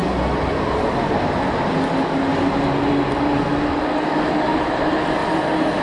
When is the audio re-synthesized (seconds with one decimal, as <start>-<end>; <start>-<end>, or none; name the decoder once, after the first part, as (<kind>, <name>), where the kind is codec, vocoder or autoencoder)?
none